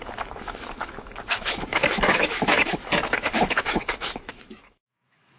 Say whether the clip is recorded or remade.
remade